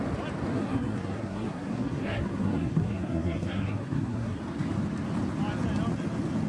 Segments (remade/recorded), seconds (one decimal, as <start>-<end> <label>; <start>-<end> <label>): 0.0-0.5 recorded; 0.5-4.4 remade; 4.4-6.5 recorded

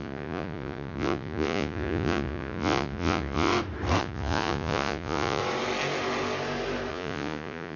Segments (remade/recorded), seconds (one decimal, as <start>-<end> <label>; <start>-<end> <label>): 0.0-3.5 remade; 3.5-4.0 recorded; 4.0-5.4 remade; 5.4-6.9 recorded; 6.9-7.8 remade

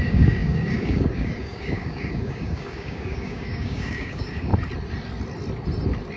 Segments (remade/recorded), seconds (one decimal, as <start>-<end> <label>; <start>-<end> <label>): 0.0-4.5 remade; 4.5-6.2 recorded

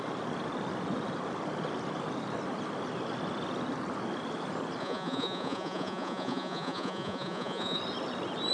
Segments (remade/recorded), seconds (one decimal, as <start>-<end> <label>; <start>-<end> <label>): 0.0-4.8 recorded; 4.8-7.8 remade; 7.8-8.5 recorded

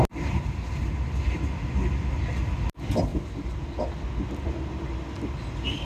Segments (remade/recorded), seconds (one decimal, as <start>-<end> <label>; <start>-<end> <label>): 0.0-5.8 recorded

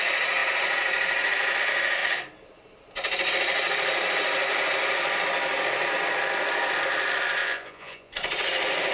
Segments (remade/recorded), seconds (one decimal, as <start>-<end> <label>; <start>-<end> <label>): 0.0-7.4 recorded; 7.4-8.1 remade; 8.1-8.9 recorded

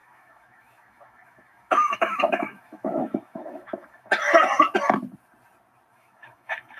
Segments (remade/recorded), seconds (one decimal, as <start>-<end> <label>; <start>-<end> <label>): 0.0-4.1 remade; 4.1-5.9 recorded; 5.9-6.8 remade

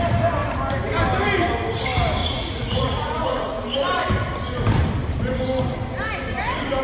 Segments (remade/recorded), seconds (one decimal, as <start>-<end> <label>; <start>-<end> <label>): 0.0-2.2 recorded; 2.2-3.6 remade; 3.6-6.8 recorded